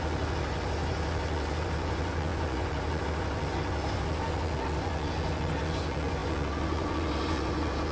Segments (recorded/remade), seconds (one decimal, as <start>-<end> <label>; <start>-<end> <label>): 0.0-7.9 remade